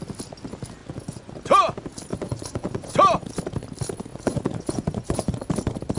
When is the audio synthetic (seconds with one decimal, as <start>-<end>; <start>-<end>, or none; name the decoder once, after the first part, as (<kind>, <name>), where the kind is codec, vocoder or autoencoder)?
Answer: 0.8-1.3 (vocoder, Vocos); 2.1-2.9; 4.1-5.5